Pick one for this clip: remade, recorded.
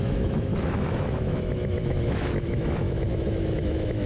remade